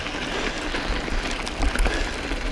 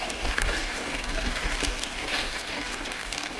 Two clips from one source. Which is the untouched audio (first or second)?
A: first